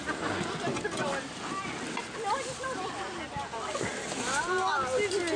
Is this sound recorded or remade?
recorded